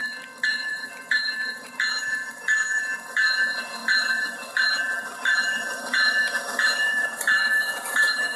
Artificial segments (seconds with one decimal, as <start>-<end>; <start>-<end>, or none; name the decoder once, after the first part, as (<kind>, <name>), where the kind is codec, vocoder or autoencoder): 0.5-8.4 (vocoder, BigVGAN v2)